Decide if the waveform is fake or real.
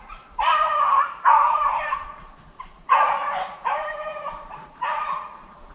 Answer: fake